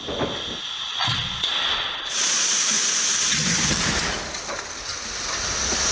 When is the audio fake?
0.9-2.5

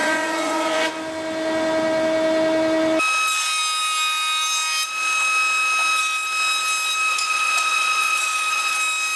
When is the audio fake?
0.0-0.9; 7.1-8.7

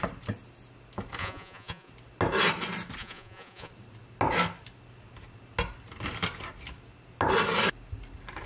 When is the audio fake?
1.2-1.9; 3.0-3.7

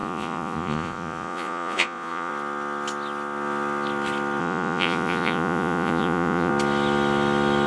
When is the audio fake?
0.0-2.3; 4.4-6.5

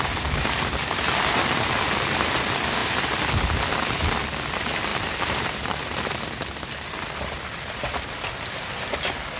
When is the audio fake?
none

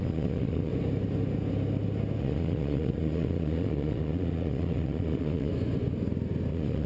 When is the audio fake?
0.0-0.7; 2.2-5.5; 6.5-6.9